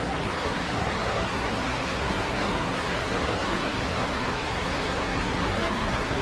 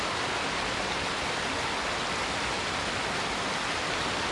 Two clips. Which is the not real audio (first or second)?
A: first